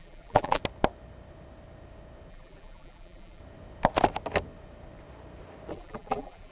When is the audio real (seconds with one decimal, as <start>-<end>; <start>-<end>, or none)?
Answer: 0.6-2.3; 3.4-5.7